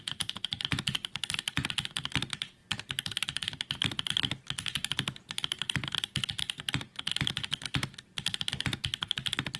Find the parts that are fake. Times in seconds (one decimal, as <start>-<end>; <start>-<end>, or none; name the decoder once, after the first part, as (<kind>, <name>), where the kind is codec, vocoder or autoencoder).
none